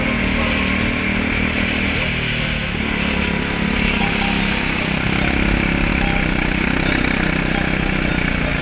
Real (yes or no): yes